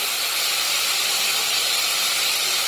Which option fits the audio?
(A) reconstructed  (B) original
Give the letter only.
B